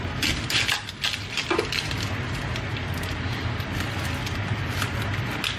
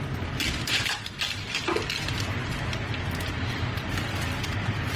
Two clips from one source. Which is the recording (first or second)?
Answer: first